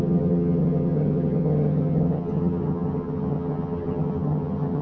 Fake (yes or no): yes